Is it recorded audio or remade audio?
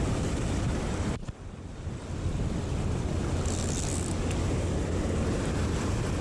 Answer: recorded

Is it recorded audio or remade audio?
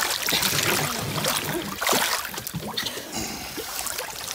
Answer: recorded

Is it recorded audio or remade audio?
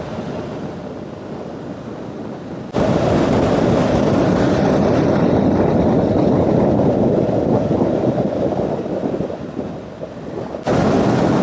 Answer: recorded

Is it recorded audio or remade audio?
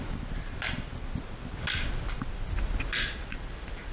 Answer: recorded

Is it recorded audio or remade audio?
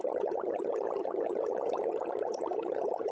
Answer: remade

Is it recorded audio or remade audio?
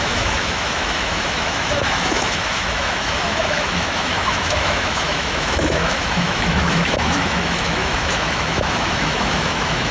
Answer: remade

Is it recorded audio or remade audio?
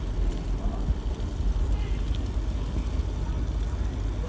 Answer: recorded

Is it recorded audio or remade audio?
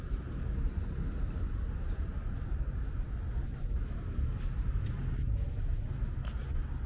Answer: recorded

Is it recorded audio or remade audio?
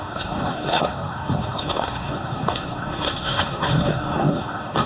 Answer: remade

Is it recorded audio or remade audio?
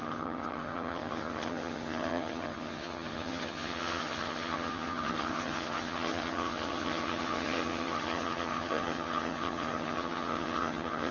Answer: remade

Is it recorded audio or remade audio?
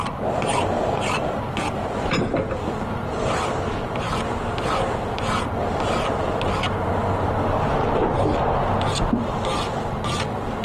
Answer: recorded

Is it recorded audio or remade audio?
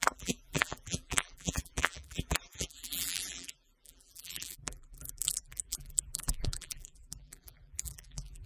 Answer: remade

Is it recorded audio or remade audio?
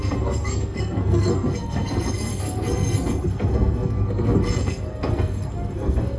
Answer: remade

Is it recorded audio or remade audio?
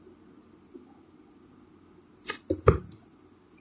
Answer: recorded